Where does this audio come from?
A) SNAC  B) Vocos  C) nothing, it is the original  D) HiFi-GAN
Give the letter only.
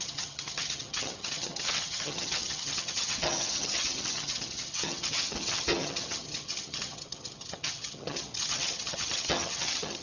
D